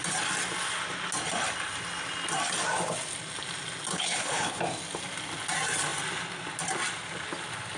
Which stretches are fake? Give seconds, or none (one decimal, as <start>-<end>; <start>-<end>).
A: 3.9-4.6